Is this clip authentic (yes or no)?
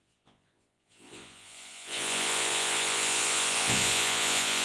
no